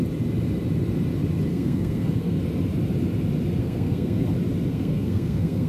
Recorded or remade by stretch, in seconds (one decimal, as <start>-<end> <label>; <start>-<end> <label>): 0.0-1.5 recorded; 1.5-2.4 remade; 2.4-3.6 recorded; 3.6-4.3 remade; 4.3-4.7 recorded; 4.7-5.7 remade